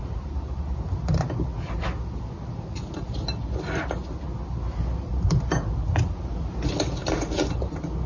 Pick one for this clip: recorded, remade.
recorded